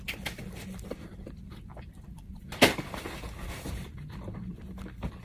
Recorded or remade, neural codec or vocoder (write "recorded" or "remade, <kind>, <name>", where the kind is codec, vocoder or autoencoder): recorded